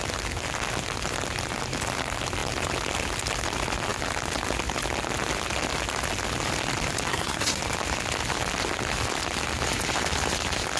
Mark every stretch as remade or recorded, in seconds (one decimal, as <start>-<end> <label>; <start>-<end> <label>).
0.0-7.1 recorded; 7.1-7.6 remade; 7.6-10.8 recorded